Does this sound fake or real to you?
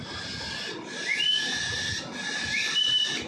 real